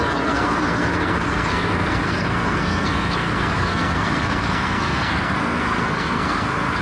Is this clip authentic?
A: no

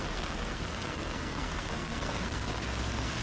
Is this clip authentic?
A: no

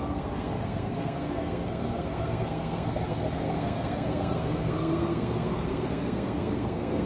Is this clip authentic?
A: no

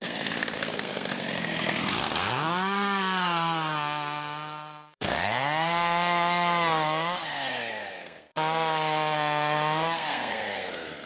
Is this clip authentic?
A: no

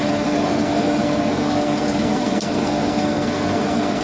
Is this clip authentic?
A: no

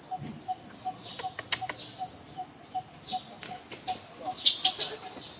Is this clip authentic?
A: yes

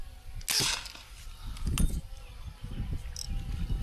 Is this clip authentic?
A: yes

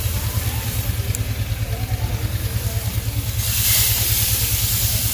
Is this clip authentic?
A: yes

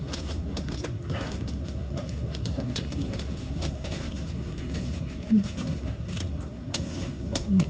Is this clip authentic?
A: no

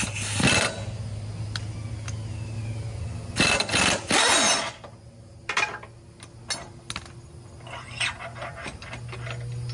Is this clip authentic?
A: yes